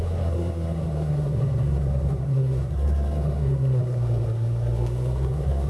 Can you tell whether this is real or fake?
fake